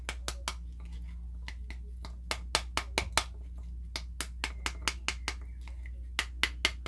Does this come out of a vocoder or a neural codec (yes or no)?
no